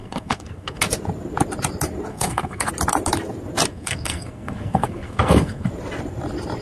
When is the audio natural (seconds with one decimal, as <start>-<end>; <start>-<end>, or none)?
0.8-2.1; 2.7-3.7; 5.7-6.6